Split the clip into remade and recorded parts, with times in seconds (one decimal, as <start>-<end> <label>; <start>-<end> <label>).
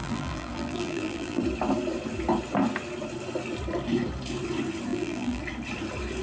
0.0-1.4 remade; 1.4-4.9 recorded; 4.9-5.4 remade; 5.4-6.2 recorded